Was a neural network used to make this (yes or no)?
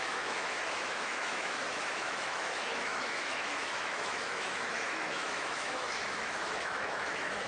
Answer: yes